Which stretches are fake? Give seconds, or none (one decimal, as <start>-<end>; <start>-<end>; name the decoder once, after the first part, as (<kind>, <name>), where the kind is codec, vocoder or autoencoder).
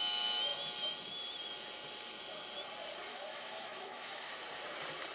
3.1-4.3 (autoencoder, DAC-VAE)